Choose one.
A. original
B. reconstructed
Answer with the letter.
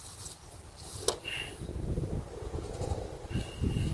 A